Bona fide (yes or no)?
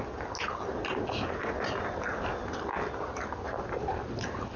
yes